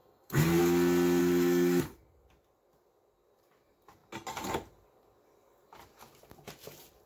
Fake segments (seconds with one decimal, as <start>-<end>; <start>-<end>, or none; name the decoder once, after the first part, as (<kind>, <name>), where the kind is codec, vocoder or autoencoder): 0.0-0.6 (codec, SNAC); 1.2-1.8